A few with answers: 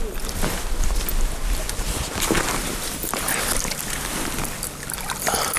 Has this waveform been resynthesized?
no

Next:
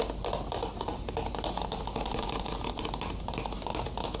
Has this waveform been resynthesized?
no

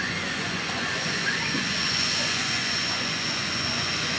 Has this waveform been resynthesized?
yes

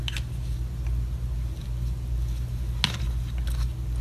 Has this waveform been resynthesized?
no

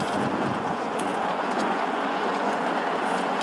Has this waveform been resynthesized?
yes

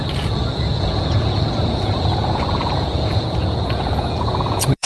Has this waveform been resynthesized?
yes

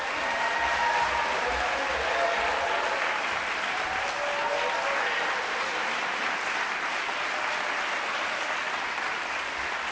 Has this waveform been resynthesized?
no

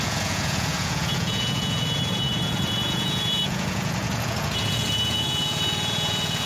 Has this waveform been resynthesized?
yes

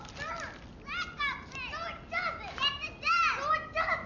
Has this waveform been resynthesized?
no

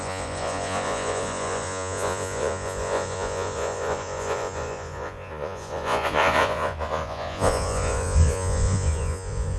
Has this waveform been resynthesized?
yes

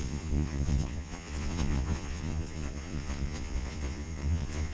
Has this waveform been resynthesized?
yes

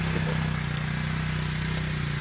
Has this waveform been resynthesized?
no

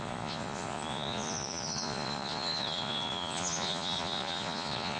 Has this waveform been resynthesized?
yes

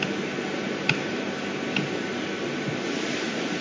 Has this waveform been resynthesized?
no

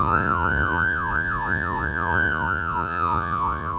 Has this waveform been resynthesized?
yes